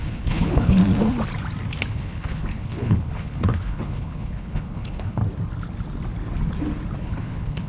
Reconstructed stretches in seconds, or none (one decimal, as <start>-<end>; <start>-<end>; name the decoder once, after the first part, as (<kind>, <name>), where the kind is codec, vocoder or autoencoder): 0.0-0.8 (codec, HILCodec); 1.9-5.2; 7.0-7.7